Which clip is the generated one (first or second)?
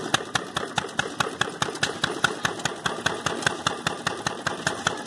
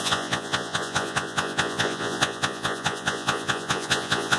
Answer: second